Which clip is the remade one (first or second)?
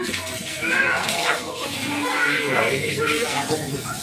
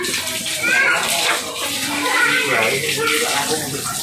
first